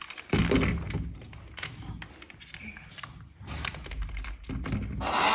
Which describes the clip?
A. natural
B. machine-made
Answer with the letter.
A